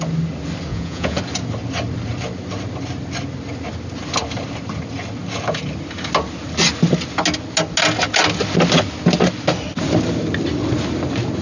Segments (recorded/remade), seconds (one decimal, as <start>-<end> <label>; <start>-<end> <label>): 0.0-0.7 recorded; 0.7-1.2 remade; 1.2-11.4 recorded